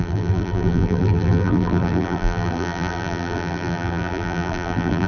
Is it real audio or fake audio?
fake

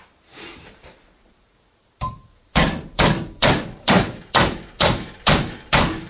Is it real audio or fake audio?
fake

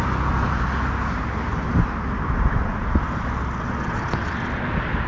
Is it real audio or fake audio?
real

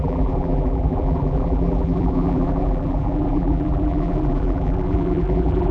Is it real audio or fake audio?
fake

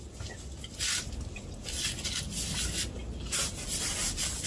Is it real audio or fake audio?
real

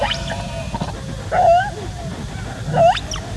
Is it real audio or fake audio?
real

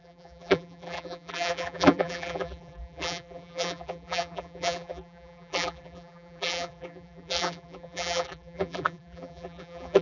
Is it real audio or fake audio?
fake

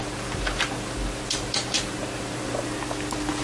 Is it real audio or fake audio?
real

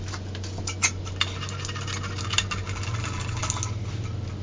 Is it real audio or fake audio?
real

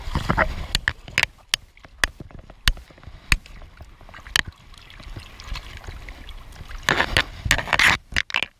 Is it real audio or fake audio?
real